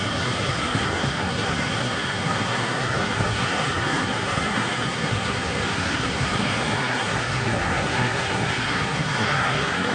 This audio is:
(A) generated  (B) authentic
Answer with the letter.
A